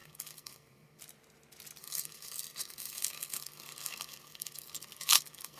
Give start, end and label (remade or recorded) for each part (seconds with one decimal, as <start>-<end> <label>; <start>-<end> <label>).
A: 0.0-1.0 remade; 1.0-1.8 recorded; 1.8-5.6 remade